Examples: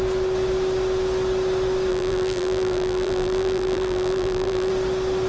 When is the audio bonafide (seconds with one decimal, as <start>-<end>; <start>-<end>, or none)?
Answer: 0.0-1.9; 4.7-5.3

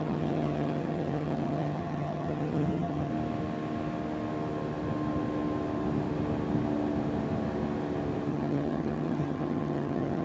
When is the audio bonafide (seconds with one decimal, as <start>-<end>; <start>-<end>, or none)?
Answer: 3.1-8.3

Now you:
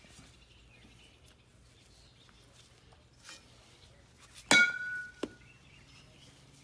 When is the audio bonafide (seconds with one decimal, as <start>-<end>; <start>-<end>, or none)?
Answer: 0.0-6.6

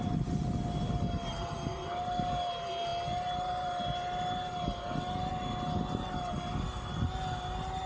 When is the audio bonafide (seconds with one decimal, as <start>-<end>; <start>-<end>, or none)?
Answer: 0.0-7.9

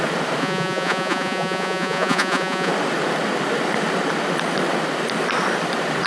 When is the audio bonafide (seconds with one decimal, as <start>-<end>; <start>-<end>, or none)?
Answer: 0.0-0.4; 2.7-6.1

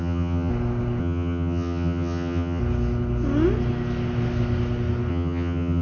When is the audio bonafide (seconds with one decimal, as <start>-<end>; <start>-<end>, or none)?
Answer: 0.5-1.0; 2.6-5.1

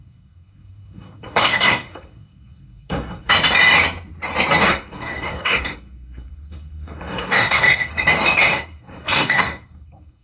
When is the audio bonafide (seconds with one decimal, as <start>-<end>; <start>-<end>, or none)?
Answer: 3.3-4.6; 7.9-8.4